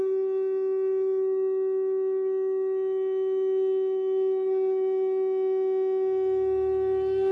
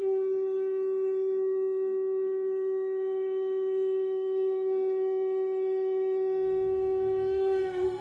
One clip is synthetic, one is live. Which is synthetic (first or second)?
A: second